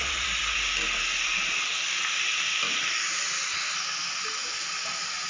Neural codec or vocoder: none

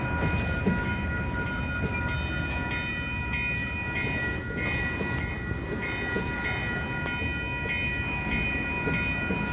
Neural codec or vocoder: none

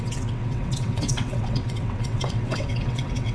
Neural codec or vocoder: vocoder, WaveNeXt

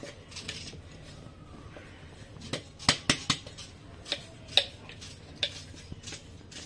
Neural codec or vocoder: none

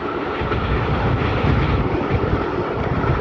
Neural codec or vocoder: none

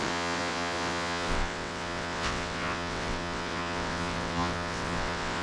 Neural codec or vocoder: vocoder, WaveNeXt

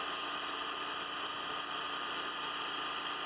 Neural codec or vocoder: none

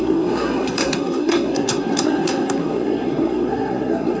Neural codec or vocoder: codec, SNAC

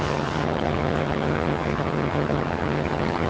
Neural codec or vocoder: vocoder, HiFi-GAN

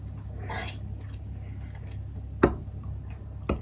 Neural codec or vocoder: none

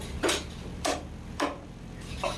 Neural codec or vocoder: none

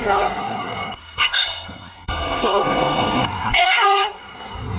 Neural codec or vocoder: codec, SNAC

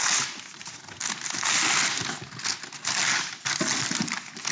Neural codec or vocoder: none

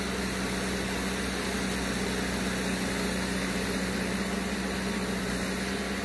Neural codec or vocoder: none